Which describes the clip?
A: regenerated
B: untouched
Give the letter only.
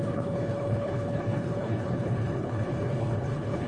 A